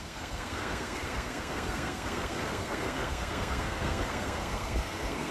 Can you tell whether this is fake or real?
fake